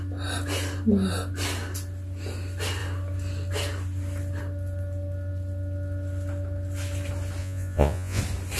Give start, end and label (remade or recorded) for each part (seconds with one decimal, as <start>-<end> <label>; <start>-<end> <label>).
0.0-7.4 recorded; 7.4-8.2 remade; 8.2-8.6 recorded